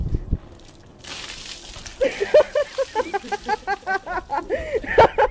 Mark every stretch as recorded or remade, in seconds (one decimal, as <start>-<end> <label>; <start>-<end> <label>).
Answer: 0.0-0.9 recorded; 0.9-1.5 remade; 1.5-1.9 recorded; 1.9-5.3 remade